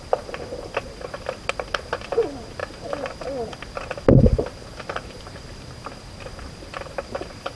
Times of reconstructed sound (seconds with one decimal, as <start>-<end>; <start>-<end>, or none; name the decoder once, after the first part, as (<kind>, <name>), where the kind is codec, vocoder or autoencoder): none

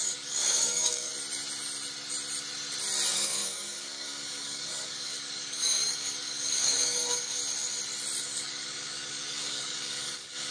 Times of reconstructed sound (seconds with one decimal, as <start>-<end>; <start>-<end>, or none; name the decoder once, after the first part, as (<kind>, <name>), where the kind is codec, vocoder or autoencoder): 0.0-1.1 (codec, DAC); 3.1-7.4; 8.2-10.5

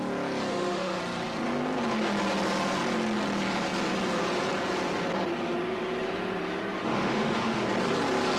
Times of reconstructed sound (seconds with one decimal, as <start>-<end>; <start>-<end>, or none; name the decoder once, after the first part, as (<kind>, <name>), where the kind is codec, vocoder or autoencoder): 0.5-1.0 (autoencoder, DAC-VAE); 6.8-7.6

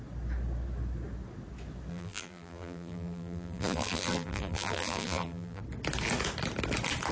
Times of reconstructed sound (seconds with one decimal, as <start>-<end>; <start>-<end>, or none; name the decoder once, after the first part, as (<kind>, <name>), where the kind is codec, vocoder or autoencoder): 1.9-5.6 (vocoder, BigVGAN v2)

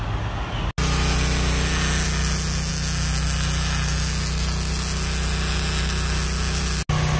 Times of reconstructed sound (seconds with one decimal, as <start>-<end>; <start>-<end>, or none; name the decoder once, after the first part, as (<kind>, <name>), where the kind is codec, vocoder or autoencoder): none

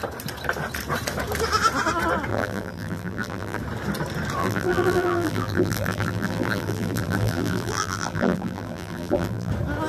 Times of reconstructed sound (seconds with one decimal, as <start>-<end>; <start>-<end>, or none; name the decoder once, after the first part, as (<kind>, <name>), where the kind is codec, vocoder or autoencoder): 2.3-3.6 (vocoder, BigVGAN v2); 4.4-9.5

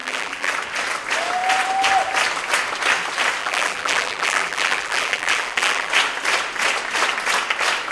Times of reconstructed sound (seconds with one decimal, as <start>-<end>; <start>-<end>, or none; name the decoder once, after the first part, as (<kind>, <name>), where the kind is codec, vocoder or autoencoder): 0.0-0.5 (vocoder, BigVGAN v2); 3.4-5.9

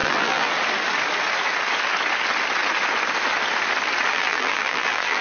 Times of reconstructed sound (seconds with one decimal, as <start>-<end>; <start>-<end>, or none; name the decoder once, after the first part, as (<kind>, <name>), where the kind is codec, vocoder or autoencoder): 0.0-0.5 (vocoder, BigVGAN v2); 4.1-5.2